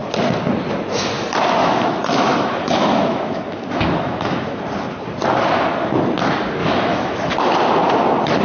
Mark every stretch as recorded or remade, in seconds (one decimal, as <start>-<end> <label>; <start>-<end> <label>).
0.0-1.6 recorded; 1.6-4.6 remade; 4.6-6.6 recorded; 6.6-7.4 remade; 7.4-8.4 recorded